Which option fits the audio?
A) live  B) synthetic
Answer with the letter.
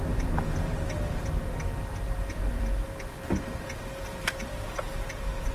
A